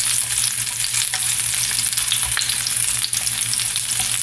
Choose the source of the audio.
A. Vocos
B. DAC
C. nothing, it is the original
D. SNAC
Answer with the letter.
C